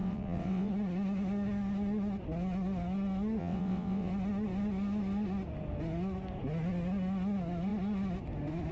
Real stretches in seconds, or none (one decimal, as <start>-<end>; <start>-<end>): 0.7-3.4; 4.1-8.7